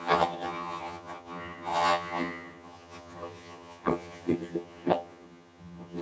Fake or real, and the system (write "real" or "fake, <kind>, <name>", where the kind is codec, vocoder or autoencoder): fake, vocoder, HiFi-GAN